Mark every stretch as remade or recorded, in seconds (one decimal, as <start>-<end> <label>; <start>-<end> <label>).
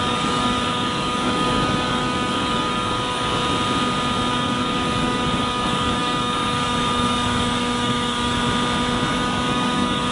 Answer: 0.0-3.4 remade; 3.4-4.3 recorded; 4.3-8.4 remade; 8.4-9.1 recorded; 9.1-10.1 remade